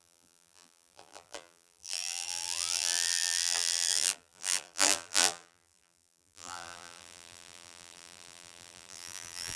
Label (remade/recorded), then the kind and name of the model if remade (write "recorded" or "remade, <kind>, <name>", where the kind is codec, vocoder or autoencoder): remade, vocoder, BigVGAN v2